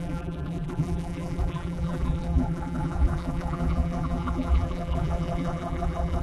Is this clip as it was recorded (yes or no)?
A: no